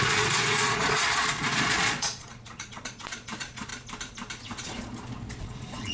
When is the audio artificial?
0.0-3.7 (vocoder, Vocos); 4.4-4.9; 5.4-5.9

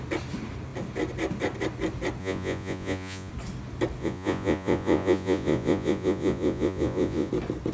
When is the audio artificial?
2.2-3.3 (vocoder, Vocos); 4.0-7.3

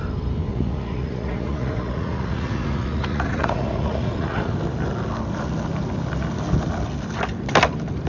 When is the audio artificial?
0.5-4.5 (vocoder, Vocos)

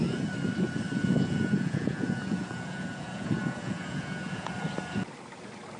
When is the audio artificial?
1.0-4.5 (vocoder, Vocos)

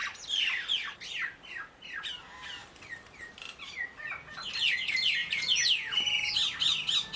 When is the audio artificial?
5.2-6.3 (vocoder, Vocos)

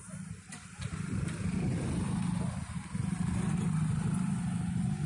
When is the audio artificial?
none